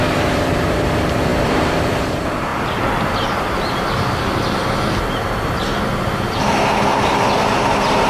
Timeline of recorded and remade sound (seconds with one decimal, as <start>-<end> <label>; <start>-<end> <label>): 0.0-2.5 remade; 2.5-7.3 recorded; 7.3-8.1 remade